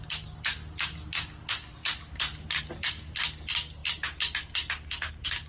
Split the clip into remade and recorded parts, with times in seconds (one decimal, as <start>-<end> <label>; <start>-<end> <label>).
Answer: 0.0-5.5 recorded

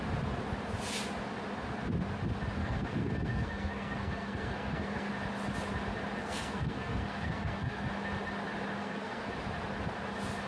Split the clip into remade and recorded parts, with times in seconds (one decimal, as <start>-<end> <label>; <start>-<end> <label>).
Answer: 0.0-2.6 recorded; 2.6-5.1 remade; 5.1-6.2 recorded; 6.2-7.9 remade; 7.9-8.8 recorded; 8.8-9.3 remade; 9.3-10.5 recorded